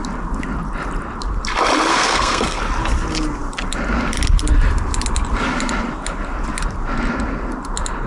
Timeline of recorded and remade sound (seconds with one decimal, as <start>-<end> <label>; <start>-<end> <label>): 0.0-1.9 recorded; 1.9-2.6 remade; 2.6-8.1 recorded